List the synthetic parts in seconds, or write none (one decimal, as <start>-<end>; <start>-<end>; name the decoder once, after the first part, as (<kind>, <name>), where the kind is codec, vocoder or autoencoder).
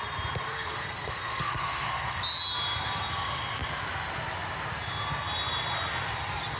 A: 0.5-2.2 (codec, SNAC)